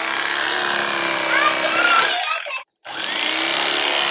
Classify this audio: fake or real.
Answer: real